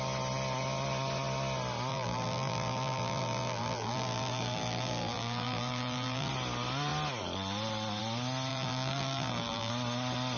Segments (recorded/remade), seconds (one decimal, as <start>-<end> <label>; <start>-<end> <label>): 0.0-1.9 recorded; 1.9-6.3 remade; 6.3-8.5 recorded; 8.5-9.7 remade; 9.7-10.4 recorded